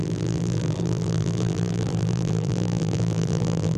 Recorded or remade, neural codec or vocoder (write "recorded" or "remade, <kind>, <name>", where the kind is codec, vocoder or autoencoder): remade, vocoder, BigVGAN v2